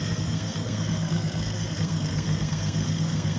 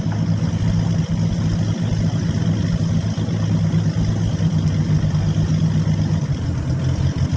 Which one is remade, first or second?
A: first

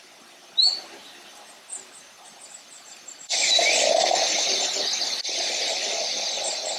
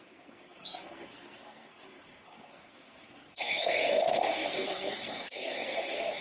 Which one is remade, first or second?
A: second